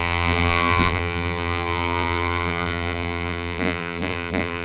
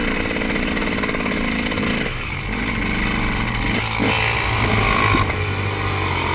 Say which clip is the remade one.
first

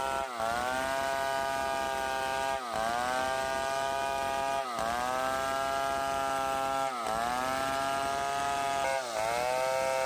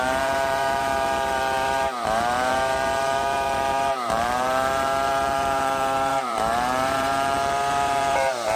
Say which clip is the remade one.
second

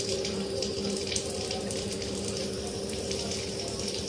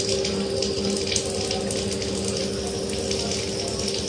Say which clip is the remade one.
first